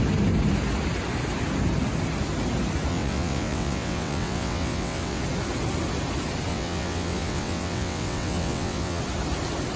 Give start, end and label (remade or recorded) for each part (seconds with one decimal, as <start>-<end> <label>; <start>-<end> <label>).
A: 0.0-2.9 recorded; 2.9-5.2 remade; 5.2-6.5 recorded; 6.5-9.0 remade; 9.0-9.8 recorded